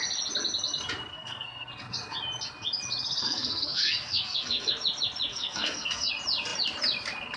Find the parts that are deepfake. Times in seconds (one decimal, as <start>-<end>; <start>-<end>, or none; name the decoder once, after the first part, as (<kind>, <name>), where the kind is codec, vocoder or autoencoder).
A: 1.1-1.7 (codec, SNAC); 3.2-4.7; 5.3-6.1